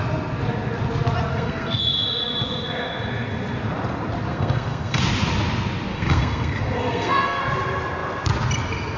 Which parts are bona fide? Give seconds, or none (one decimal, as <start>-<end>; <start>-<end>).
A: 0.0-1.3; 1.8-4.3; 5.0-5.9; 7.4-9.0